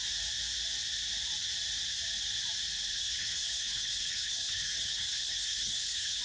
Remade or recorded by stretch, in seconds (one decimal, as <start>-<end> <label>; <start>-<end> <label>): 0.0-2.9 recorded; 2.9-6.2 remade